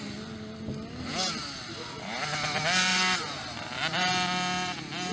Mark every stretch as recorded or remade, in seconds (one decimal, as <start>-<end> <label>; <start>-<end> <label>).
0.0-2.9 recorded; 2.9-4.1 remade; 4.1-5.1 recorded